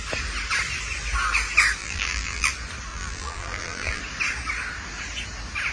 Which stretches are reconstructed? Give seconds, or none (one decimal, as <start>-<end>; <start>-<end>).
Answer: 1.8-2.5; 2.9-4.0